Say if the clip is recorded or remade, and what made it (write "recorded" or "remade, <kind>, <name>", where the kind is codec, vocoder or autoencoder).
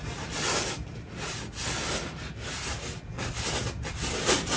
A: recorded